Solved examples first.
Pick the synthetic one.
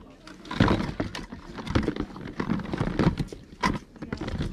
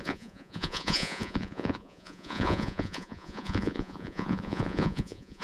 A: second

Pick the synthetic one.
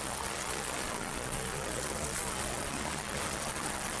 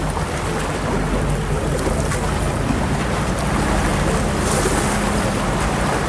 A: first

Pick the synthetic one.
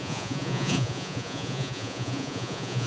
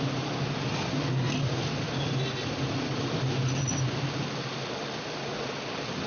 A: first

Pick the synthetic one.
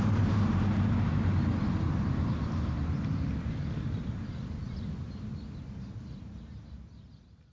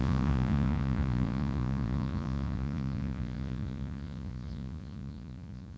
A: second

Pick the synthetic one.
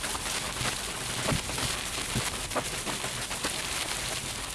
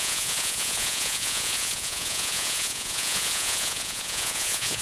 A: second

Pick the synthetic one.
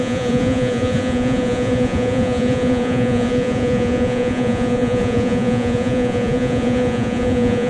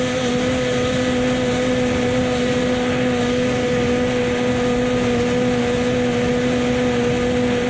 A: first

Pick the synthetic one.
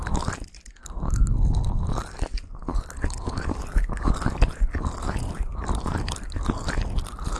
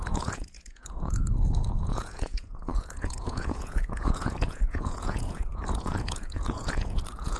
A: second